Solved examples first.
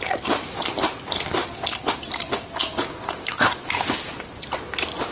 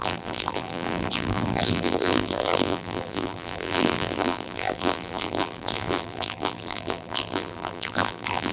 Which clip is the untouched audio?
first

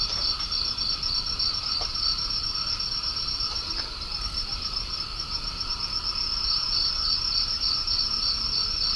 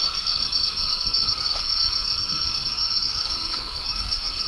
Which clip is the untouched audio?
first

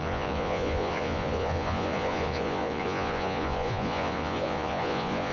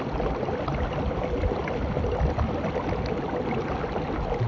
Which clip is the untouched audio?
second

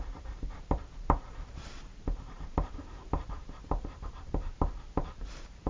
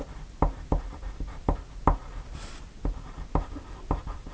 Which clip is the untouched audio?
second